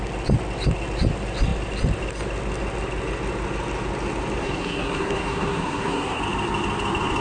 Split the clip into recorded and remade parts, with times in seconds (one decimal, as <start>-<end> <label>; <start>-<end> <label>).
0.0-4.4 recorded; 4.4-6.2 remade; 6.2-7.2 recorded